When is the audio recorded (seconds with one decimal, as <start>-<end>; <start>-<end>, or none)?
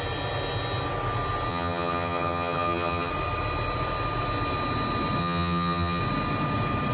0.0-1.5; 3.1-5.2; 6.0-6.9